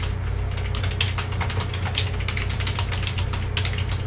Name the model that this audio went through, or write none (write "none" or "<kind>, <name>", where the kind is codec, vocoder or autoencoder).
none